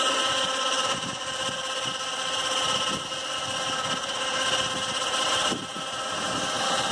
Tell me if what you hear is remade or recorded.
recorded